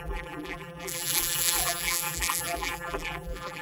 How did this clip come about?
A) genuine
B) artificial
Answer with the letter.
B